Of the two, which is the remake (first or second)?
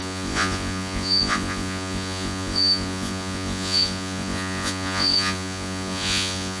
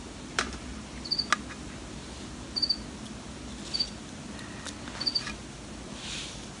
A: first